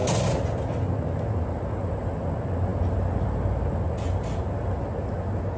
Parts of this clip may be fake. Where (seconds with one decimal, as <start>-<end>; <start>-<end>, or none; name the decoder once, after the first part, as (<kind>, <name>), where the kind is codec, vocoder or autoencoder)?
none